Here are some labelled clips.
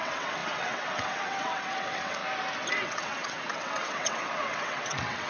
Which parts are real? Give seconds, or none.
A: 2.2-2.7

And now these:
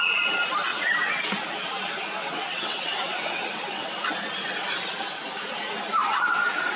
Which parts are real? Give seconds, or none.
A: 0.0-0.7; 1.2-2.2; 3.9-6.0